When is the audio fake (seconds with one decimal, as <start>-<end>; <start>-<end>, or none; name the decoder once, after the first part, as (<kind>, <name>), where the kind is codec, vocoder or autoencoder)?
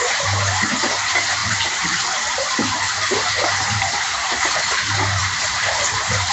1.4-3.3 (vocoder, BigVGAN v2); 5.2-6.3